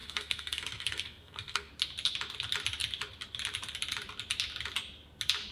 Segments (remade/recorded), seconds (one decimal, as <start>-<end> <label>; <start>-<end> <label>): 0.0-1.7 remade; 1.7-5.5 recorded